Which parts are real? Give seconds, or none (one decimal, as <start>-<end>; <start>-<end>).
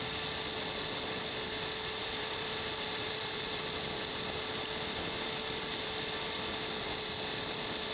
0.0-2.0; 3.6-7.9